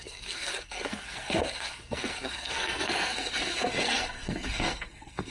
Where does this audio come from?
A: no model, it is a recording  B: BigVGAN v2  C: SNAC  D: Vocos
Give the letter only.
C